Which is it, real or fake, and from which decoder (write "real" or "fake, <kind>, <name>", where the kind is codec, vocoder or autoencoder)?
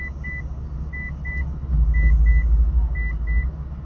real